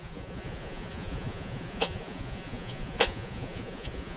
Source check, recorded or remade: remade